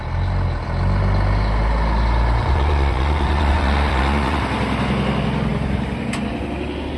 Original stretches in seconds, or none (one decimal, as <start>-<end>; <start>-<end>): 0.0-2.4; 4.4-7.0